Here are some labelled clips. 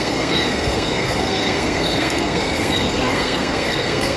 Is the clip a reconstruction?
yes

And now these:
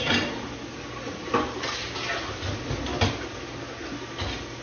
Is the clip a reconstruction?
no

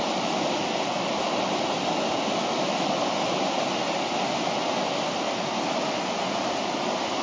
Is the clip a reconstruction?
no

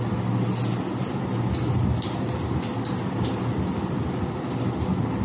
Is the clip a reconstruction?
no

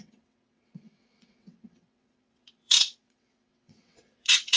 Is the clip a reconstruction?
yes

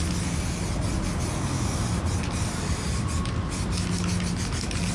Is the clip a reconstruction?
no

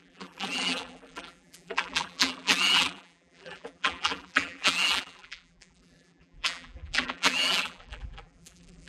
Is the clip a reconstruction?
yes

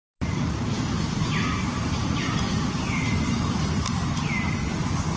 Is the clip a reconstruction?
no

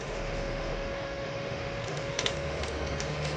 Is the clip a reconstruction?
yes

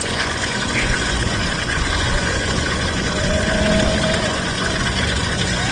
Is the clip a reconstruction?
yes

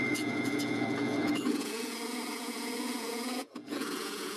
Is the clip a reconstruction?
yes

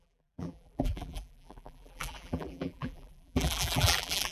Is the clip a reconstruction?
yes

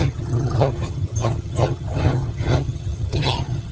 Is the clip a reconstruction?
yes